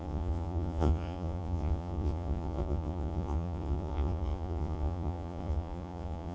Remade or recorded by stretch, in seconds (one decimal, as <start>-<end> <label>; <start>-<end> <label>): 0.0-6.3 remade